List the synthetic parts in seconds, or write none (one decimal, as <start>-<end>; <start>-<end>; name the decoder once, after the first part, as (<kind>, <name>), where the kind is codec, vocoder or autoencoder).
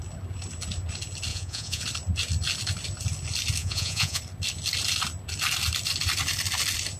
1.3-1.8 (vocoder, Vocos); 3.6-4.2